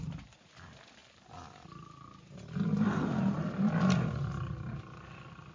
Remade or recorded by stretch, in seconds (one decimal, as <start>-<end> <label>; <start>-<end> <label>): 0.0-5.5 recorded

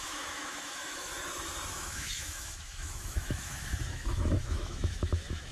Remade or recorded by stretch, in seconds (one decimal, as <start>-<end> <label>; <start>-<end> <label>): 0.0-1.1 remade; 1.1-1.7 recorded; 1.7-5.5 remade

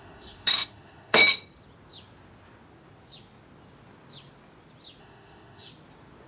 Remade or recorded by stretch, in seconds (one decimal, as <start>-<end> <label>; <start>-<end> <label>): 0.0-1.2 remade; 1.2-5.0 recorded; 5.0-5.7 remade; 5.7-6.3 recorded

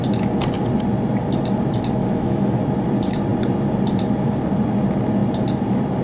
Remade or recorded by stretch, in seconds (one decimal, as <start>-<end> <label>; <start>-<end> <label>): 0.0-2.0 recorded; 2.0-2.6 remade; 2.6-6.0 recorded

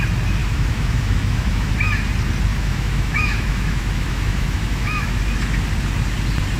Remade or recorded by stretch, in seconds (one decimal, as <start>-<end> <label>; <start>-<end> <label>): 0.0-0.4 recorded; 0.4-1.7 remade; 1.7-2.5 recorded; 2.5-5.2 remade; 5.2-6.6 recorded

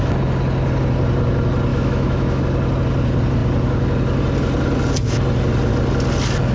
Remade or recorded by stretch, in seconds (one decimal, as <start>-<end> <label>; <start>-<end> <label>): 0.0-1.7 recorded; 1.7-2.4 remade; 2.4-6.5 recorded

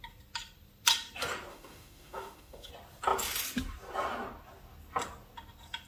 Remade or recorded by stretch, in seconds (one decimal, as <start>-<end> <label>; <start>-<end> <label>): 0.0-1.5 recorded; 1.5-2.7 remade; 2.7-5.9 recorded

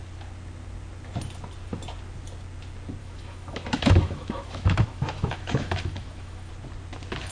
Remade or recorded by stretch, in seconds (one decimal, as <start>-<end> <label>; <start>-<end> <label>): 0.0-3.0 recorded; 3.0-6.5 remade; 6.5-7.3 recorded